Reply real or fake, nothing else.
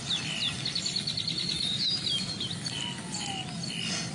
real